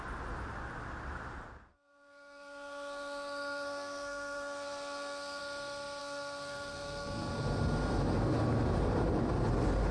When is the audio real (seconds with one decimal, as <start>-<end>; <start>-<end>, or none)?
0.0-1.7; 5.4-6.0; 7.3-9.9